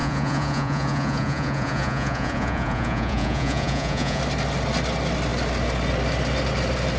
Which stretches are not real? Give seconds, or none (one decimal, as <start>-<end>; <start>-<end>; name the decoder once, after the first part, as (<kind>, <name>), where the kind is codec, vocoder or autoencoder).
0.0-4.2 (vocoder, Vocos)